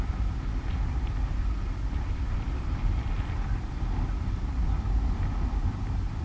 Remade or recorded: recorded